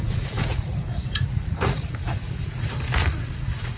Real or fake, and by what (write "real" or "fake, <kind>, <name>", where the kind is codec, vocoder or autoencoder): fake, vocoder, Vocos